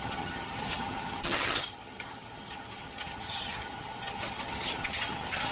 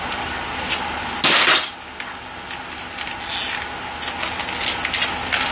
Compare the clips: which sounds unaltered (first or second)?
second